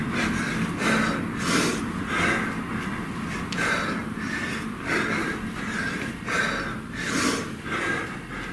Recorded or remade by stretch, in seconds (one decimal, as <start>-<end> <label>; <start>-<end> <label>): 0.0-4.0 recorded; 4.0-6.4 remade; 6.4-8.5 recorded